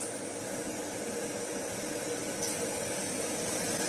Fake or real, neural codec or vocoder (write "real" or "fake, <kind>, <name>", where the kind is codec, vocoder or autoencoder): real